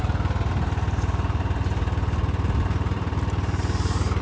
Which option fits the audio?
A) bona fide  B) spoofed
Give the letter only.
A